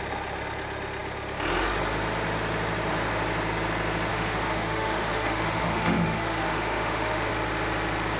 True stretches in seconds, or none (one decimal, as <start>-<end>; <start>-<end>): 0.0-4.1; 7.3-8.2